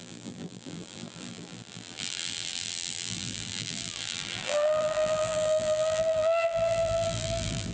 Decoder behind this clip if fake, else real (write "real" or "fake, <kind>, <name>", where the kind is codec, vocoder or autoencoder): fake, vocoder, BigVGAN v2